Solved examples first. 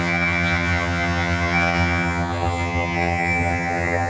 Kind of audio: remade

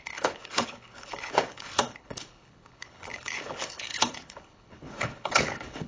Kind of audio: remade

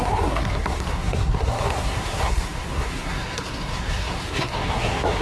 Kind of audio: remade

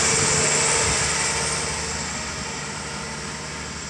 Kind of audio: recorded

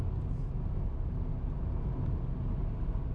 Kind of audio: recorded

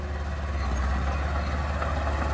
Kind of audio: recorded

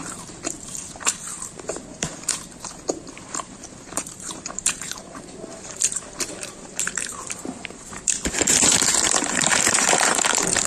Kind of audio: remade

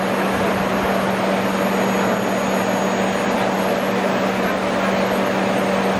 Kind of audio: recorded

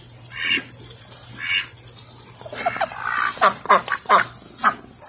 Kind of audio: recorded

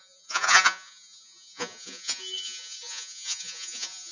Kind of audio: remade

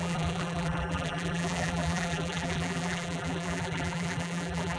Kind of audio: remade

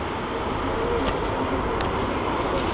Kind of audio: recorded